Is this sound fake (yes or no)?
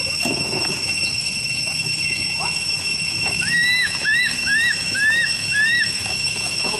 yes